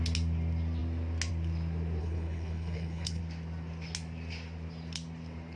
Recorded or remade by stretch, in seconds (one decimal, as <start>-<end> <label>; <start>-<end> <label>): 0.0-2.0 recorded; 2.0-3.2 remade; 3.2-5.6 recorded

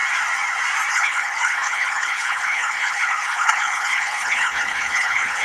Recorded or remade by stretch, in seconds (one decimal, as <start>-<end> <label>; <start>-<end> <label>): 0.0-0.9 recorded; 0.9-5.4 remade

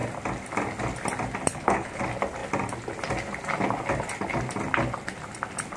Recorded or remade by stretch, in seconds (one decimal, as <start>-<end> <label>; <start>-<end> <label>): 0.0-1.5 recorded; 1.5-2.0 remade; 2.0-5.8 recorded

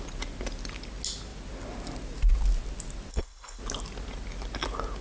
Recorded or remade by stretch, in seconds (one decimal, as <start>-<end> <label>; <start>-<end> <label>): 0.0-3.1 recorded; 3.1-3.6 remade; 3.6-5.0 recorded

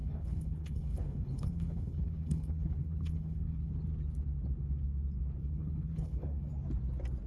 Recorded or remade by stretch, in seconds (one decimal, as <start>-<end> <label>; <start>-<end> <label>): 0.0-3.7 remade; 3.7-5.4 recorded; 5.4-6.5 remade; 6.5-7.3 recorded

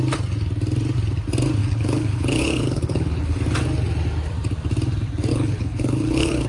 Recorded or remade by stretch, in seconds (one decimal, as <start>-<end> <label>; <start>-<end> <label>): 0.0-1.6 recorded; 1.6-3.4 remade; 3.4-5.3 recorded; 5.3-6.5 remade

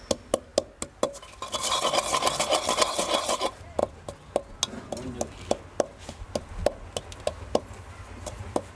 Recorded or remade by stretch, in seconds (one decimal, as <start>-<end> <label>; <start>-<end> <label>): 0.0-8.8 recorded